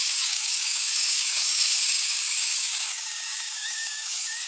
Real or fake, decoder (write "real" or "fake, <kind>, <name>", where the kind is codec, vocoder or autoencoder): fake, codec, DAC